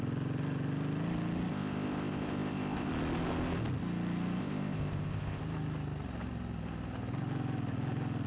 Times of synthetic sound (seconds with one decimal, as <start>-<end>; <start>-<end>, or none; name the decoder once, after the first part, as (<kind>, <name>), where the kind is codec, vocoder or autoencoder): 1.5-2.9 (codec, ZipCodec); 4.4-5.4